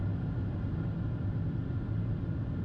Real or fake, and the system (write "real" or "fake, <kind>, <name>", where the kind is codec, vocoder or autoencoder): fake, vocoder, BigVGAN v2